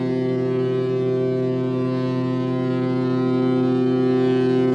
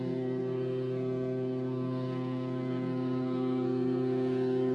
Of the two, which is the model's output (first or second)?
second